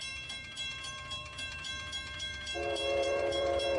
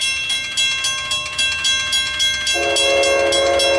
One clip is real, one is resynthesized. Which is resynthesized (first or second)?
first